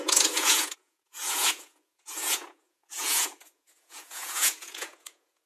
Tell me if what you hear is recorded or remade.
remade